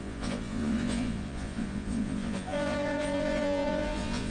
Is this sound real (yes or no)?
no